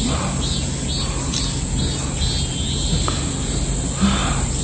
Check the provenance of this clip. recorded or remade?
recorded